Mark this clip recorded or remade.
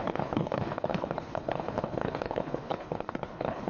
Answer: remade